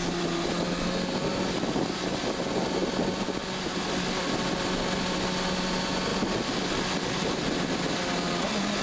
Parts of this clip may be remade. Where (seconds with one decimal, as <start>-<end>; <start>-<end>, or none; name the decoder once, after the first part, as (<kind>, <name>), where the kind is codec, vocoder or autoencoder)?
none